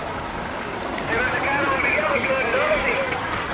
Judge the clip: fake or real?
real